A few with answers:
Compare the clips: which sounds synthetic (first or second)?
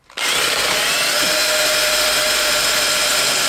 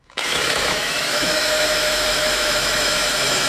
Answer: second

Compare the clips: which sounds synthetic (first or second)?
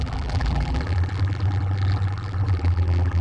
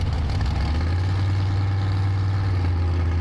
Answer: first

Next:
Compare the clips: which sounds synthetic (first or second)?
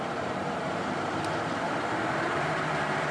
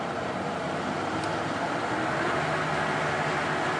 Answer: first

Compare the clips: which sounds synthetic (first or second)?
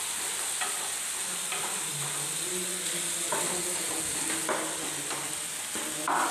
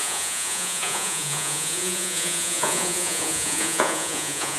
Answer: second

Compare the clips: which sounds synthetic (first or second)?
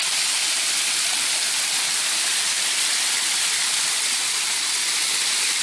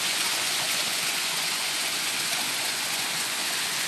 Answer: second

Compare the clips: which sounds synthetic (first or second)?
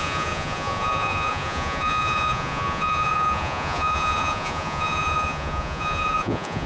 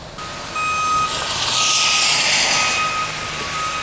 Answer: first